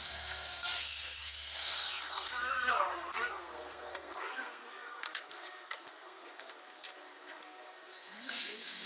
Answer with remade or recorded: remade